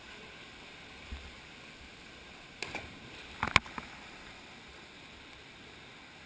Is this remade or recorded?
recorded